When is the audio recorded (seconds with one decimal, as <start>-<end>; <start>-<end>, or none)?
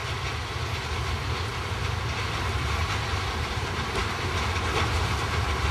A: 0.0-3.1; 4.0-4.8